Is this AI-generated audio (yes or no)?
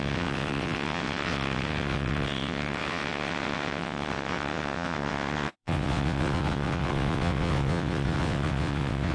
yes